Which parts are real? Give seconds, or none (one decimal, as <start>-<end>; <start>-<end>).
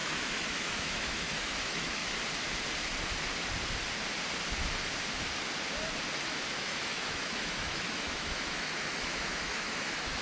2.0-6.6